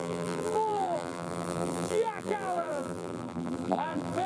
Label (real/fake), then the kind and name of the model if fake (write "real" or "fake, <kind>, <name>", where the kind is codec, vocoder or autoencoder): fake, vocoder, BigVGAN v2